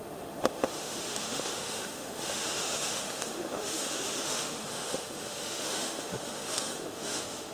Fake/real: fake